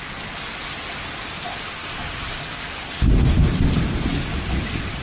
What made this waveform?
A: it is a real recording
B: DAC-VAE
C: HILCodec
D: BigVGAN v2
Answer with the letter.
A